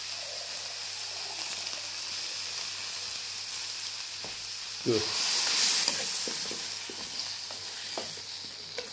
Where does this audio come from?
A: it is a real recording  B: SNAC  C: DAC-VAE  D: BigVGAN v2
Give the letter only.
A